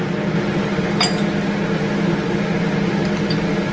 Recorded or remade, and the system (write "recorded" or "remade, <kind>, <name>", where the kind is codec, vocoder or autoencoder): recorded